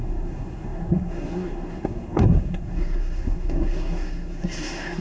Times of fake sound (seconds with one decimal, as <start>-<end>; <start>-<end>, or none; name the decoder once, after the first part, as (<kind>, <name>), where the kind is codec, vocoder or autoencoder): 0.0-5.0 (codec, SNAC)